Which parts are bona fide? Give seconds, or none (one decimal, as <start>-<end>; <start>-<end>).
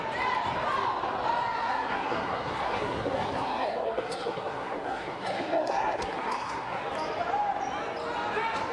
0.0-1.7; 6.8-8.7